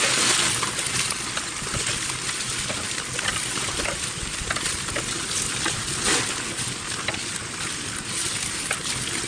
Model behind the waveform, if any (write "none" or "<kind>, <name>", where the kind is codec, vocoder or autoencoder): none